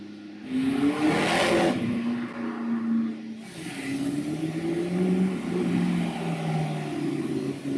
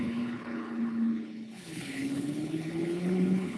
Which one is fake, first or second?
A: second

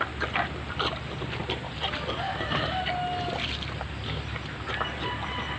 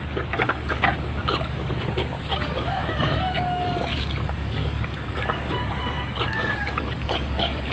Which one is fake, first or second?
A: second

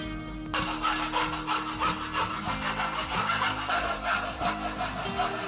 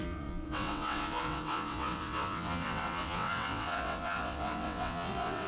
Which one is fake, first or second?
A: second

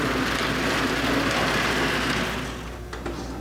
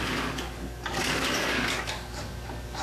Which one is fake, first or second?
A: second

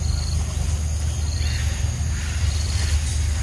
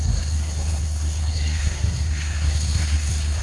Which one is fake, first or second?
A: second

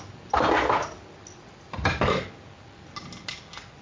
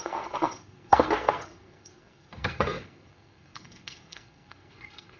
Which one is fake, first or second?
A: second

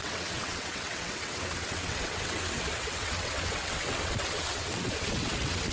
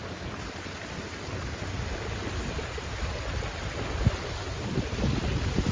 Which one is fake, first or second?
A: first